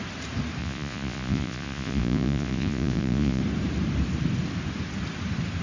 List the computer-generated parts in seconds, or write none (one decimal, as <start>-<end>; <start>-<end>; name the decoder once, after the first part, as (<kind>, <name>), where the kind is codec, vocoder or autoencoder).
0.6-3.4 (vocoder, Vocos)